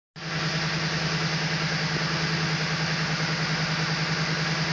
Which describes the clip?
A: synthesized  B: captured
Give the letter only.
B